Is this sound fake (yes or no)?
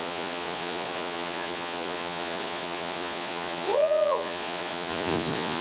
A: yes